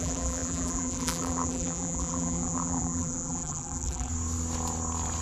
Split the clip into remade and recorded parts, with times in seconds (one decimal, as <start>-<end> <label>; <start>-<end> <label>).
0.0-4.1 remade; 4.1-5.2 recorded